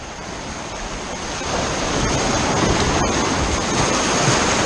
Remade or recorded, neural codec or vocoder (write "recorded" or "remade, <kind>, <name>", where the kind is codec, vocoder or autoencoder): recorded